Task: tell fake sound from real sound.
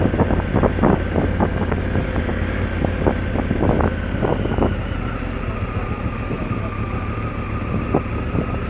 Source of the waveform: real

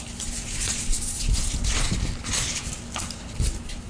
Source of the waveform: real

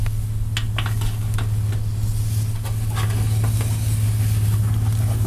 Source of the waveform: real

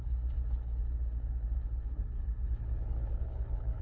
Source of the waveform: fake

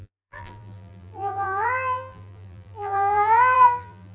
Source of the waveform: fake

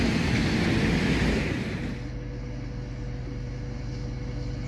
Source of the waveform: real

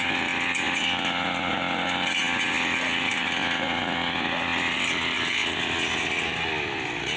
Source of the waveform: real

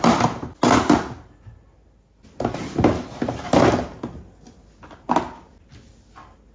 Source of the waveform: real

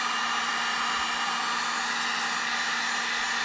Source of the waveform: real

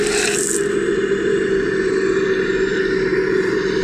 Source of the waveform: real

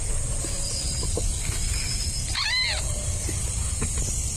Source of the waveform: real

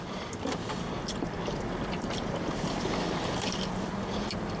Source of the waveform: fake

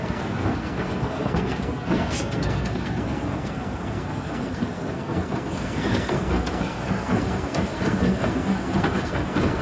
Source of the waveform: fake